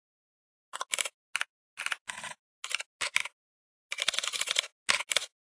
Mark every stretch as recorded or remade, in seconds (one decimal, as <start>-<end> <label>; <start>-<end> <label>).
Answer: 0.0-5.4 recorded